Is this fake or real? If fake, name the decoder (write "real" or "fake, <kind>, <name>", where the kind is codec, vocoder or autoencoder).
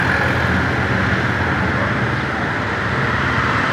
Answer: real